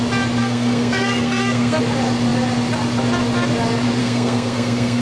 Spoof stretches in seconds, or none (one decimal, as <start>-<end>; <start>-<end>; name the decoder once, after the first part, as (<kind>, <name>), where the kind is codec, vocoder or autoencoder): 0.4-1.8 (codec, SNAC); 4.0-5.0